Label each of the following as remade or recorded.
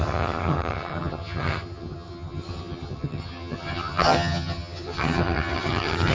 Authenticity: remade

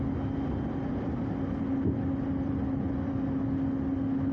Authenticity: recorded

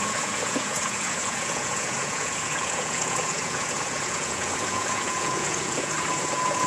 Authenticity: remade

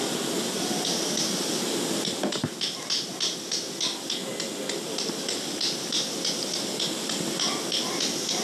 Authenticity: recorded